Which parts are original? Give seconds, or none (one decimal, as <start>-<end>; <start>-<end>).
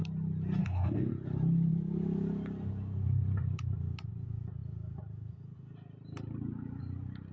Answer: 0.0-0.6; 1.1-7.3